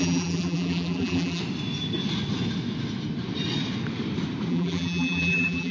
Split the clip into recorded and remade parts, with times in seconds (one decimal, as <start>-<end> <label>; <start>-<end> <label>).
0.0-1.4 remade; 1.4-4.5 recorded; 4.5-5.7 remade